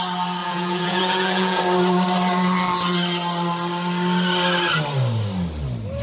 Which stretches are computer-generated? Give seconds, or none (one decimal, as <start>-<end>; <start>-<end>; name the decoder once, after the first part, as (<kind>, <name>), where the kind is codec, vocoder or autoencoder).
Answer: 0.4-1.6 (vocoder, Vocos)